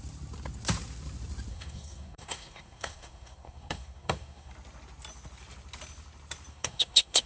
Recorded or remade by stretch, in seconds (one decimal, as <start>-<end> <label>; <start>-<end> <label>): 0.0-1.5 recorded; 1.5-4.5 remade; 4.5-6.5 recorded; 6.5-7.3 remade